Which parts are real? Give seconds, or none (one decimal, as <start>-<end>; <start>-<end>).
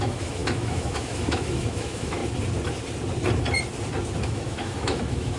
2.2-4.2